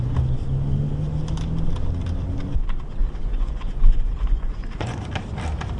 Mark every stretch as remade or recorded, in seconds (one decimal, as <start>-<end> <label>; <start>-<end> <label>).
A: 0.0-3.0 recorded; 3.0-5.1 remade; 5.1-5.8 recorded